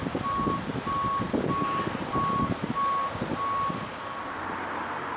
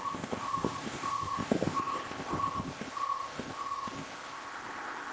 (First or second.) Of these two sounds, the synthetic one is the second